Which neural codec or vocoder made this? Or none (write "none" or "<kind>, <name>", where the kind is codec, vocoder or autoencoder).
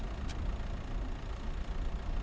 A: none